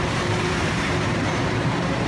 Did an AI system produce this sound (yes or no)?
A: yes